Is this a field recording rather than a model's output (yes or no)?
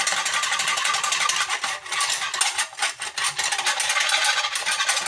yes